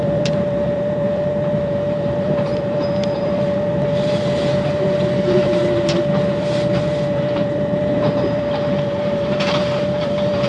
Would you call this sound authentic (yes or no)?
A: no